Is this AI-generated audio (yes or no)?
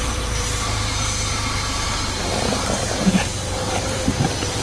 yes